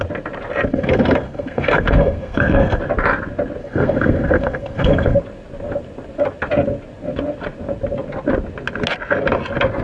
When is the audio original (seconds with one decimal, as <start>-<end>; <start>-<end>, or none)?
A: 0.0-0.7; 2.8-3.6; 5.2-9.8